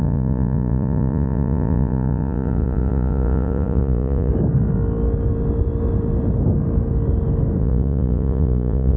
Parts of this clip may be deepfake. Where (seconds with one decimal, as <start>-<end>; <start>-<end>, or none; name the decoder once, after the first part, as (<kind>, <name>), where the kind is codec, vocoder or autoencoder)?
0.0-4.3 (vocoder, Vocos); 7.6-9.0